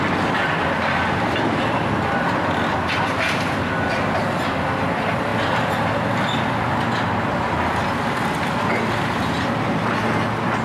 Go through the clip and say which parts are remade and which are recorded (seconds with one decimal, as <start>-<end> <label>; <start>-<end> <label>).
0.0-10.6 recorded